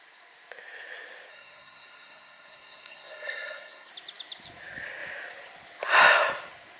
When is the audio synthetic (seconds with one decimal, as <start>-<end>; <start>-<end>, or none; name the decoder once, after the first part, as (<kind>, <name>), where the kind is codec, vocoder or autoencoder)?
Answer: 1.3-3.9 (codec, SNAC)